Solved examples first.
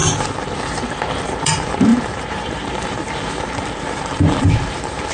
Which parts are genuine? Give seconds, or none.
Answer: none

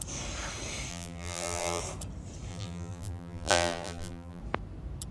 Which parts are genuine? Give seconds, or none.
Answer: 0.0-0.9; 1.8-2.5; 4.4-5.1

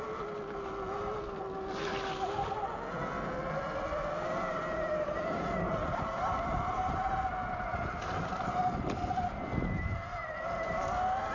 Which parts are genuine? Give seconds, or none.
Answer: 0.0-4.5; 5.7-11.3

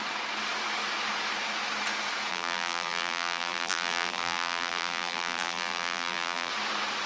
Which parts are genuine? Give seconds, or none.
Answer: 0.0-2.3; 6.5-7.1

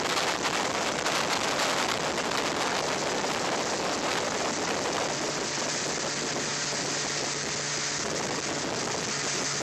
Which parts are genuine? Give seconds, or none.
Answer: 0.0-9.6